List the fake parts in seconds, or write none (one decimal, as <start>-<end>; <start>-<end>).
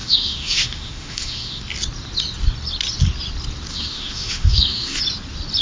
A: 0.0-1.6; 3.7-5.0